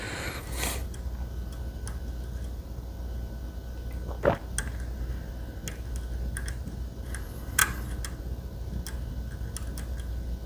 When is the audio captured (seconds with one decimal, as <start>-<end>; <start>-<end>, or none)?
0.0-10.5